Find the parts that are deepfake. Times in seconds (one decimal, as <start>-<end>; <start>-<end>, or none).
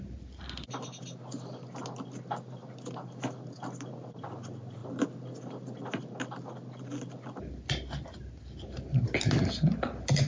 none